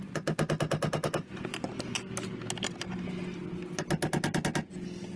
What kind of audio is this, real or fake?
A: real